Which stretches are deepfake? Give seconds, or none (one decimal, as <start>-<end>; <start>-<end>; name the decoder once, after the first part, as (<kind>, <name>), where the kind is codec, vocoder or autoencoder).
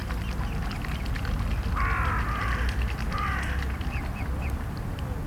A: none